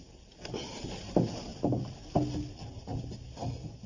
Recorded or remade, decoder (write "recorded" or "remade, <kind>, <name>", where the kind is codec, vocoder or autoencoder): recorded